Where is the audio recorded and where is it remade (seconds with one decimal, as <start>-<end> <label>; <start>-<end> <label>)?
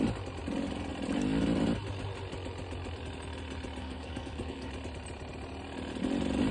0.0-3.8 recorded; 3.8-4.7 remade; 4.7-6.5 recorded